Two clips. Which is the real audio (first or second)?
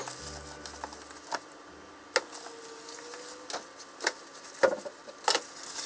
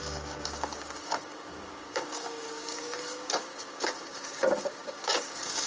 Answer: first